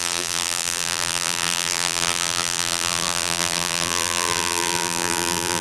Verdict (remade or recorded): remade